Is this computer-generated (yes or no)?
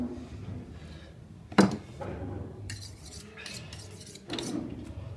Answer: no